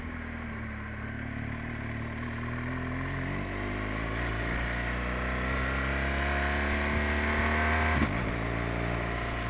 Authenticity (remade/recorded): recorded